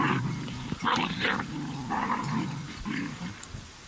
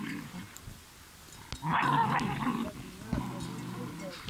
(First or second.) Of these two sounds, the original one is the second